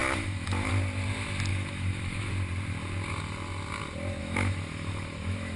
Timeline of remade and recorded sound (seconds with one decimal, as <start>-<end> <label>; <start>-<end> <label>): 0.0-0.7 remade; 0.7-1.5 recorded; 1.5-2.3 remade; 2.3-4.2 recorded; 4.2-5.6 remade